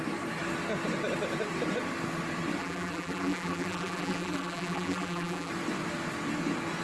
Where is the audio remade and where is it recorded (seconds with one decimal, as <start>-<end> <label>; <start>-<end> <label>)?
0.0-2.6 recorded; 2.6-5.5 remade; 5.5-6.8 recorded